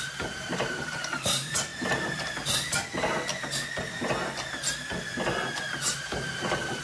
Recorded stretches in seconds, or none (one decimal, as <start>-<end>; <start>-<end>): 1.7-5.8